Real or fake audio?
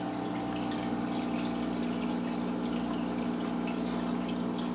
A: real